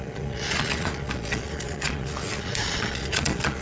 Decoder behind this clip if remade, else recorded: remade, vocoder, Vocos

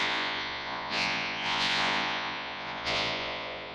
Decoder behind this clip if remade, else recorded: remade, vocoder, Vocos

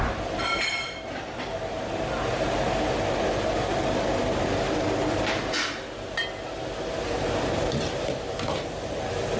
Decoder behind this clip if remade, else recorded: recorded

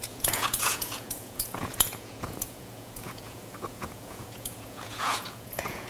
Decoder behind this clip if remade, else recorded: remade, vocoder, Vocos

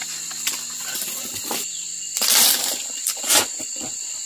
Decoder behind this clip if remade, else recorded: recorded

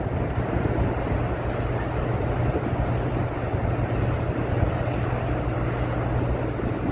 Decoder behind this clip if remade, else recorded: recorded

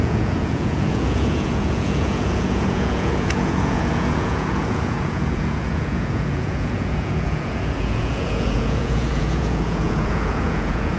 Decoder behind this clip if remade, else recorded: remade, vocoder, Vocos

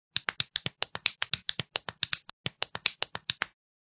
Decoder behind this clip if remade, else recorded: recorded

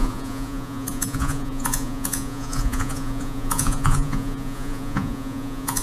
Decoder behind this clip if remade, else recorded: remade, vocoder, Vocos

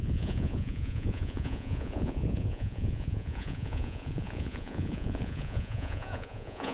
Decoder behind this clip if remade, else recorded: remade, vocoder, Vocos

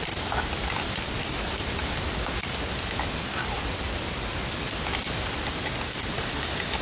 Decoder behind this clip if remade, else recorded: recorded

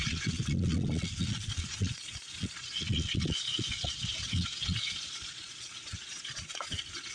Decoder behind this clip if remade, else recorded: remade, vocoder, Vocos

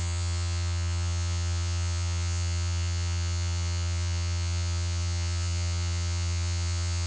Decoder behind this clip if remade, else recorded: remade, vocoder, Vocos